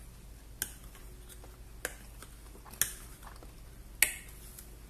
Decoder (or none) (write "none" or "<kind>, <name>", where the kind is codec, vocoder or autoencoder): none